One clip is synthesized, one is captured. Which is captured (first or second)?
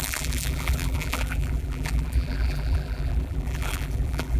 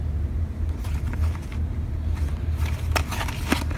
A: second